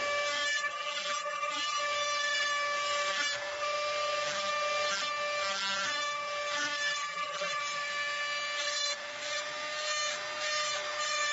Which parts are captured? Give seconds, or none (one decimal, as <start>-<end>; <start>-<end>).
0.0-0.5; 1.8-7.0; 7.6-11.3